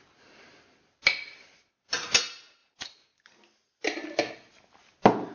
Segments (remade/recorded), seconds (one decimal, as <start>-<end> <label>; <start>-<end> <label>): 0.0-5.3 recorded